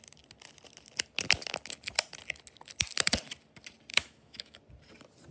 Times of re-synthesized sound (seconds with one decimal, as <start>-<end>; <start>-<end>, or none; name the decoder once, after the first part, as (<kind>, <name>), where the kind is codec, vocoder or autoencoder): 3.9-4.6 (autoencoder, DAC-VAE)